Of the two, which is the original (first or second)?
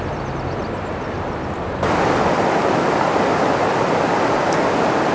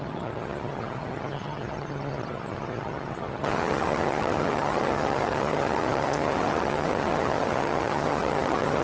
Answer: first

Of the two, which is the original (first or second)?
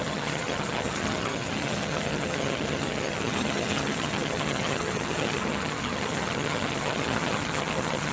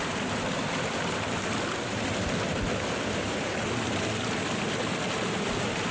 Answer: second